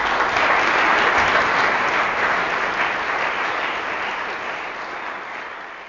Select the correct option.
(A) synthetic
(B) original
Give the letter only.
B